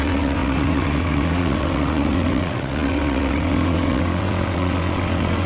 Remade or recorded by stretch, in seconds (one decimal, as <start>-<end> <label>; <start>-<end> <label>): 0.0-5.5 remade